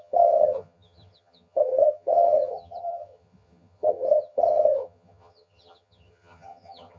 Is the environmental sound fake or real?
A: fake